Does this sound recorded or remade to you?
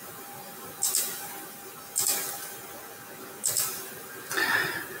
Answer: recorded